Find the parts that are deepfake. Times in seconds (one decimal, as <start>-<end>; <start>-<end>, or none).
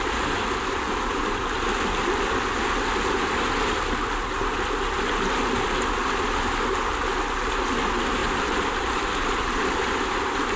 8.2-10.6